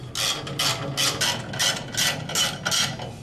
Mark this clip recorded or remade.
recorded